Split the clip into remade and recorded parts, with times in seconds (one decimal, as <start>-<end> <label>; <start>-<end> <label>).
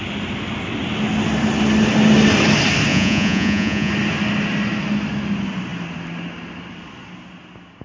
0.0-2.9 recorded; 2.9-3.9 remade; 3.9-7.8 recorded